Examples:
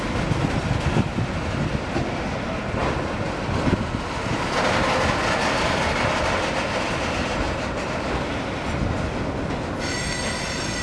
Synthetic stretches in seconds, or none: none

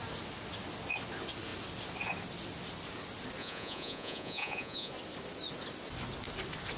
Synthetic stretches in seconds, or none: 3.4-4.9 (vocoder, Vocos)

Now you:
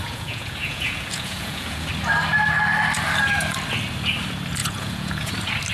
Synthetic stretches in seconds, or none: 0.0-1.9 (vocoder, Vocos); 4.6-5.3